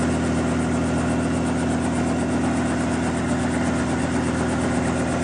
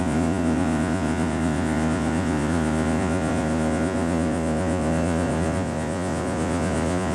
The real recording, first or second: first